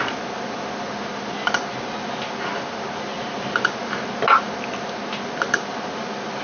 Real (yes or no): yes